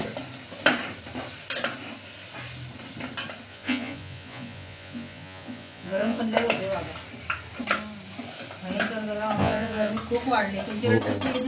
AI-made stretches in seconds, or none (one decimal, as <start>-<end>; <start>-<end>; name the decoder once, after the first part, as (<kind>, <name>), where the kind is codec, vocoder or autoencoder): 3.5-6.2 (vocoder, Vocos); 9.4-9.9